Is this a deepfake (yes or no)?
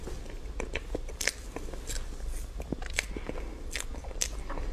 no